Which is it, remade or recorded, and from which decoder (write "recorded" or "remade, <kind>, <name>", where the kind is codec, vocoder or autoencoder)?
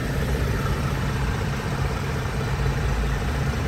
remade, vocoder, BigVGAN v2